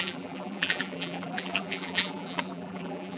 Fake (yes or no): yes